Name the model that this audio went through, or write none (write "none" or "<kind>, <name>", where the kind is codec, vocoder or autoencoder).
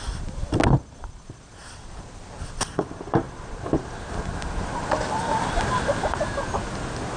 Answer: none